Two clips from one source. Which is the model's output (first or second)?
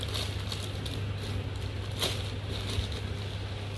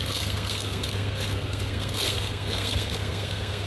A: second